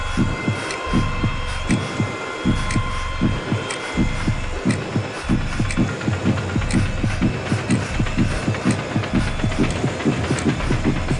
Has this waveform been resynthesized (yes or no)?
no